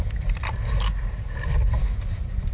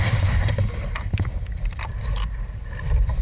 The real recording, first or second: first